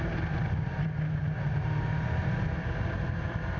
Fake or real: fake